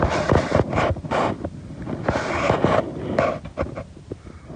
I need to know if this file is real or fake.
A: real